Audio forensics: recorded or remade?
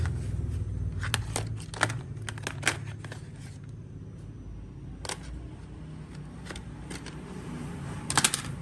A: recorded